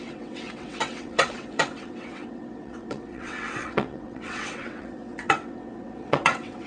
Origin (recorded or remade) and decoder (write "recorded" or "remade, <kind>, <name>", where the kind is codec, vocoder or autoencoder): remade, vocoder, WaveNeXt